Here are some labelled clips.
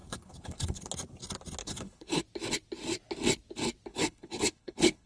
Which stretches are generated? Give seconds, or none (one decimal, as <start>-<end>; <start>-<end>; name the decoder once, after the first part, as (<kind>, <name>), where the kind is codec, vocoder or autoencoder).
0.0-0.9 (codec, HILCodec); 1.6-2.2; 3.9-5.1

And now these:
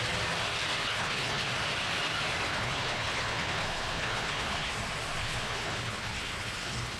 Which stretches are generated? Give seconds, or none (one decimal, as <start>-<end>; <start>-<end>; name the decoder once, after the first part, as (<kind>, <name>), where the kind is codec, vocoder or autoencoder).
0.8-1.5 (codec, HILCodec); 2.5-4.7; 5.2-7.0

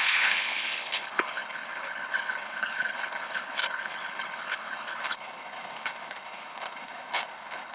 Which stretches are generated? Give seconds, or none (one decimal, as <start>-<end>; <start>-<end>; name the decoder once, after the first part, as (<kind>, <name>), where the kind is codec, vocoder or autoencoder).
0.0-7.7 (codec, HILCodec)

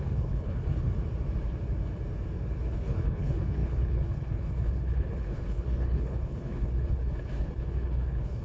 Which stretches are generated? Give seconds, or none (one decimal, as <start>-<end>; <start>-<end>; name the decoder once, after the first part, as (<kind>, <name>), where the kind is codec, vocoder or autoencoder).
0.0-0.9 (codec, HILCodec); 2.6-8.4

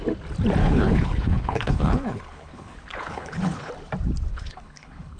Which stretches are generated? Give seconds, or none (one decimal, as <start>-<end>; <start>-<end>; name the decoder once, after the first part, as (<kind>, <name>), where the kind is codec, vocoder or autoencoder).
0.6-3.7 (codec, HILCodec); 4.3-5.2